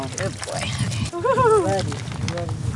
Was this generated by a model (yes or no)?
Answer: no